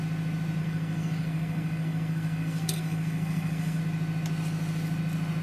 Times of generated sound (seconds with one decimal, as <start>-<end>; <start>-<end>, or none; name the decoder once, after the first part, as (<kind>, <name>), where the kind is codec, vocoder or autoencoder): 0.6-3.8 (codec, SNAC)